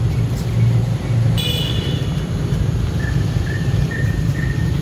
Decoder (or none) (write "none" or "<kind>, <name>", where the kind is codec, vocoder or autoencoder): none